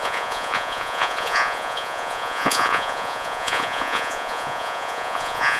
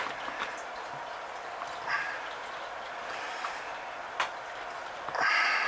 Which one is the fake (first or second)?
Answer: first